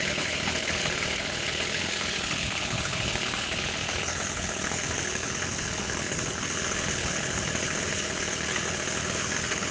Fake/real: fake